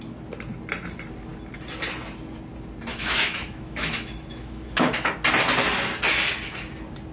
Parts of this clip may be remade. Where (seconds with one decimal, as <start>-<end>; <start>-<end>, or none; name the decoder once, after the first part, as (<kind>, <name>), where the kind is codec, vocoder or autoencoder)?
2.9-5.1 (autoencoder, DAC-VAE)